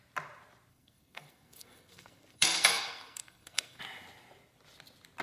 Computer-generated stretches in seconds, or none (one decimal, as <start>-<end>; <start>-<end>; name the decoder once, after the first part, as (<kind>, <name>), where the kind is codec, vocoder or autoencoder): 0.7-3.8 (codec, SNAC)